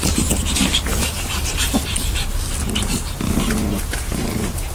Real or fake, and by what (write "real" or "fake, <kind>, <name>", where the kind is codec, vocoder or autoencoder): real